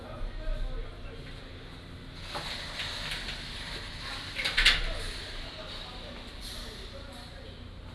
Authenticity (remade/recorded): recorded